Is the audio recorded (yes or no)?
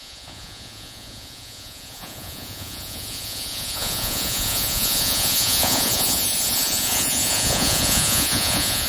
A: no